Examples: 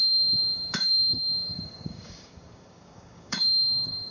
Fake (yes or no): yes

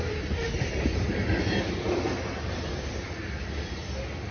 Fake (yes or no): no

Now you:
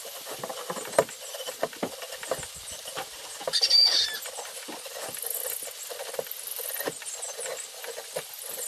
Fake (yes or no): no